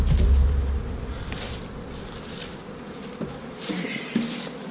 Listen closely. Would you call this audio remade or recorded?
recorded